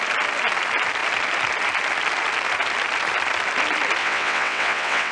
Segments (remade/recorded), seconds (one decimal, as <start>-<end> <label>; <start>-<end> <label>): 0.0-4.0 recorded; 4.0-5.1 remade